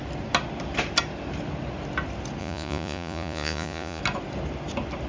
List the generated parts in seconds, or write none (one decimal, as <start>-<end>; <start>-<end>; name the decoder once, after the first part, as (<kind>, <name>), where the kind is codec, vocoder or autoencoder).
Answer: 2.4-4.0 (vocoder, Vocos)